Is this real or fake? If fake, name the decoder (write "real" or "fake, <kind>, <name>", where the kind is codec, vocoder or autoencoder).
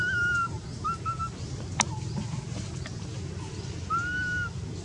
real